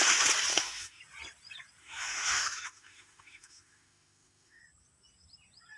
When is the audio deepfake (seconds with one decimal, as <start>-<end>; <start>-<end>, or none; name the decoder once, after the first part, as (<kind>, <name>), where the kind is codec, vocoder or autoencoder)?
0.5-1.0 (autoencoder, DAC-VAE); 1.8-4.6